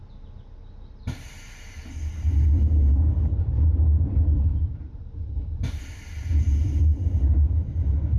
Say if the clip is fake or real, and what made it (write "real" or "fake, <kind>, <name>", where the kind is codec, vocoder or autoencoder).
real